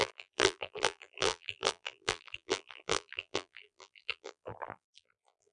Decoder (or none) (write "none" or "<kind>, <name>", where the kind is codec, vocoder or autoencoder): vocoder, BigVGAN v2